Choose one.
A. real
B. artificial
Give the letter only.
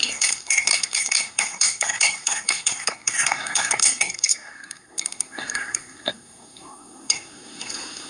B